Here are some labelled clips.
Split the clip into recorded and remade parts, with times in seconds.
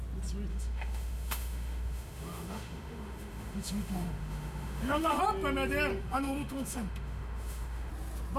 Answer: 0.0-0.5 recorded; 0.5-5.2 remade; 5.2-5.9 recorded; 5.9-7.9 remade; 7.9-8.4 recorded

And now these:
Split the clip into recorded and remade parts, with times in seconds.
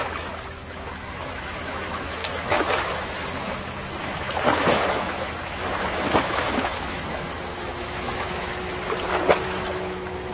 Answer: 0.0-8.5 remade; 8.5-9.4 recorded; 9.4-10.3 remade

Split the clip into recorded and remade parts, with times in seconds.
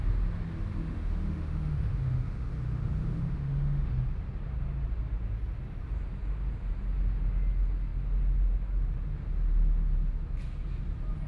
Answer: 0.0-0.7 recorded; 0.7-3.9 remade; 3.9-11.3 recorded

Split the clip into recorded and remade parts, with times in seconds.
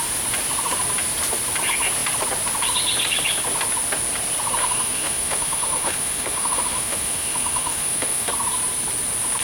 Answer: 0.0-4.6 recorded; 4.6-8.3 remade; 8.3-9.4 recorded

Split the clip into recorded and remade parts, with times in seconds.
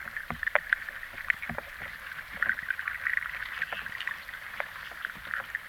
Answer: 0.0-5.7 recorded